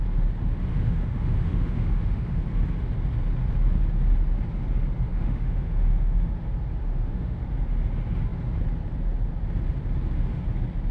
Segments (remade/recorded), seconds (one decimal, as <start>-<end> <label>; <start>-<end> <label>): 0.0-0.7 recorded; 0.7-2.4 remade; 2.4-5.1 recorded; 5.1-6.3 remade; 6.3-6.8 recorded; 6.8-7.4 remade; 7.4-10.9 recorded